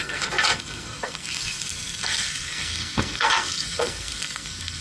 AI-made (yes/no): yes